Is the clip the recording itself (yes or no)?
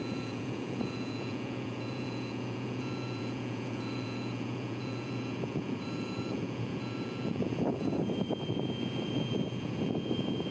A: no